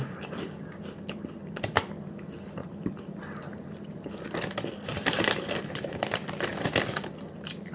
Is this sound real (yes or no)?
yes